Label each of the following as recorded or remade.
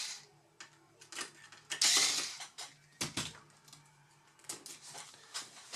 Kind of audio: recorded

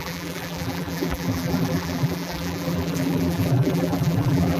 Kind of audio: remade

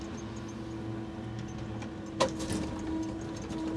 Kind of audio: recorded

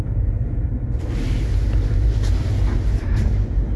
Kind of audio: remade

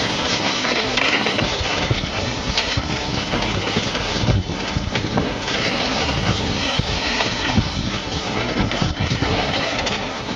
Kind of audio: remade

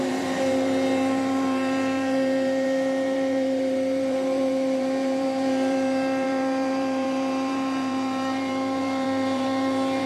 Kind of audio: remade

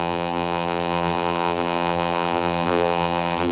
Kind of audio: remade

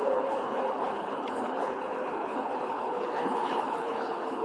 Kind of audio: remade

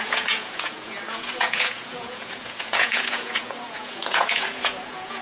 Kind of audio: remade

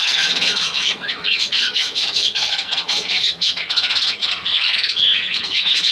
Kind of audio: remade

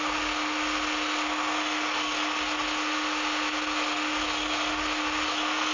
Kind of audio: recorded